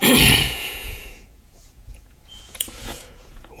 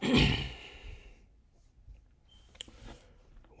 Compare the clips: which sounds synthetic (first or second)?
first